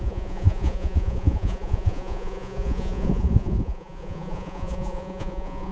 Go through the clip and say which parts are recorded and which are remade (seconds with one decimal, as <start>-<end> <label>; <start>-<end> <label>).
0.0-5.7 remade